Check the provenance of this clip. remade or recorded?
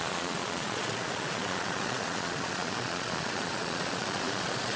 remade